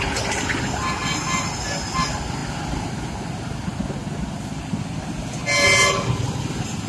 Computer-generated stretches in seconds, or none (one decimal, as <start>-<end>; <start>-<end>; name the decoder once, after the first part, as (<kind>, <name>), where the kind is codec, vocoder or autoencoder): none